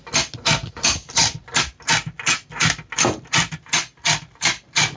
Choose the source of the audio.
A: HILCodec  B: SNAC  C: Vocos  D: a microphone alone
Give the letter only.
D